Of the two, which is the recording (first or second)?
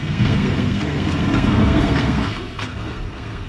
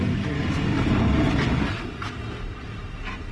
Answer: second